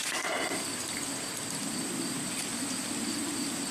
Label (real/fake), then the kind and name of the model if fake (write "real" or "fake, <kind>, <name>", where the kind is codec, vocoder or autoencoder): real